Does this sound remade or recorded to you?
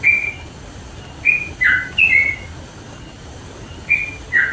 recorded